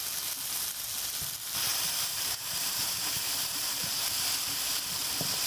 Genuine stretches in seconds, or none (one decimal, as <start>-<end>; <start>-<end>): 0.0-1.7; 4.4-5.5